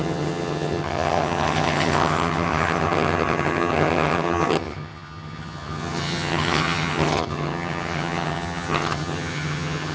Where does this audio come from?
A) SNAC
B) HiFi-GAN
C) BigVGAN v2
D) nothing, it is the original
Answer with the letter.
B